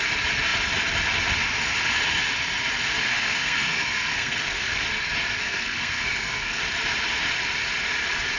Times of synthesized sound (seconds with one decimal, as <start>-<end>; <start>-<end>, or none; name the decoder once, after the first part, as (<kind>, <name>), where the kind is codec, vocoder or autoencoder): 3.0-4.9 (codec, SNAC); 5.4-6.6